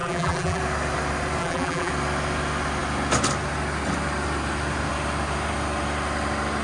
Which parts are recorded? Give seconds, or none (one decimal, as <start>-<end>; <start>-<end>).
0.6-1.4; 1.9-6.6